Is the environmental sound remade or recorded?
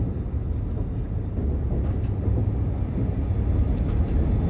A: recorded